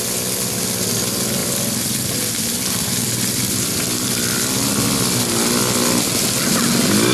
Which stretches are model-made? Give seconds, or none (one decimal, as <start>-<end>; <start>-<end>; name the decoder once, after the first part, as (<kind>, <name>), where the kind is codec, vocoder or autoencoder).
1.4-4.1 (vocoder, BigVGAN v2)